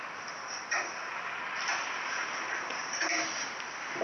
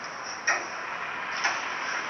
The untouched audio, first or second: second